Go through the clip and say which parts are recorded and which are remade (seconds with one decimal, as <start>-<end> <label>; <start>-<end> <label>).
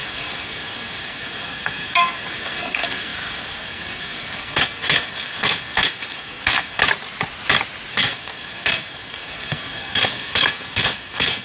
0.0-6.8 remade; 6.8-7.9 recorded; 7.9-11.4 remade